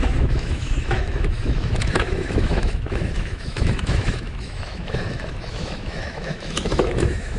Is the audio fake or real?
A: fake